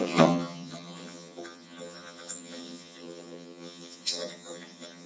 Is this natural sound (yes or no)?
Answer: no